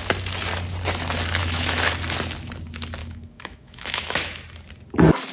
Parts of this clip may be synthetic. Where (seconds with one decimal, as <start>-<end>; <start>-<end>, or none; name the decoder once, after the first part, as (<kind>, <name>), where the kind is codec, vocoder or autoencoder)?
1.4-1.9 (autoencoder, DAC-VAE); 3.0-4.4

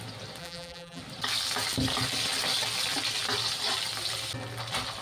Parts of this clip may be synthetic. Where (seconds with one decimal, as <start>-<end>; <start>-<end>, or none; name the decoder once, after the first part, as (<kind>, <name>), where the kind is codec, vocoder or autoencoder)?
0.4-1.0 (vocoder, BigVGAN v2)

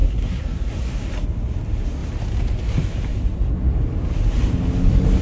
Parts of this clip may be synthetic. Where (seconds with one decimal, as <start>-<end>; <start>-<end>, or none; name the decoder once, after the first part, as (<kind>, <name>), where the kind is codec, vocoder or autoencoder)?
0.0-1.1 (codec, SNAC)